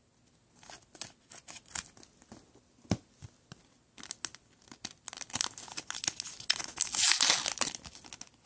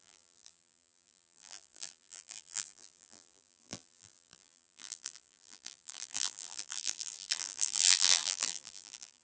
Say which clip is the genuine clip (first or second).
first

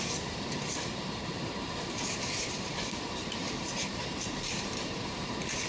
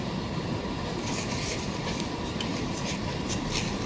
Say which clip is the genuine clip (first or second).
second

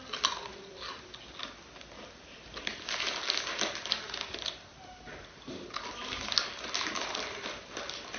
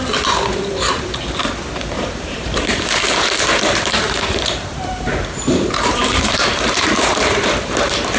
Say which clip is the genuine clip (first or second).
first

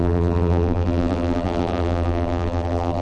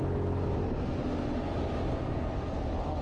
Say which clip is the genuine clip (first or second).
second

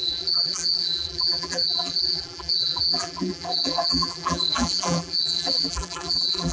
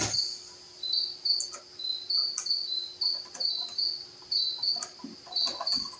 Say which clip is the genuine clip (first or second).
second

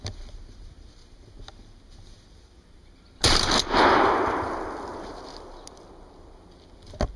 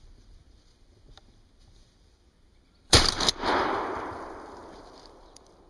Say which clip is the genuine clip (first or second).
first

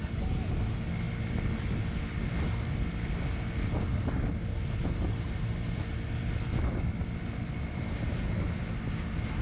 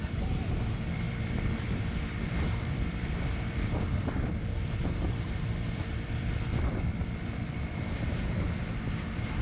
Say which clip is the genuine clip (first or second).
first